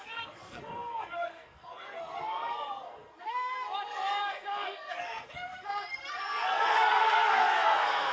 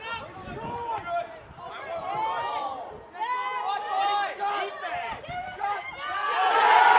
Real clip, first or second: second